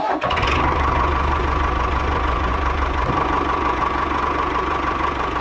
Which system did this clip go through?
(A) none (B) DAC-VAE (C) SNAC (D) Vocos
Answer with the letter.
D